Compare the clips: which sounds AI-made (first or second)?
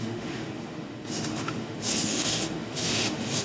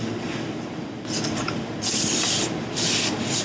first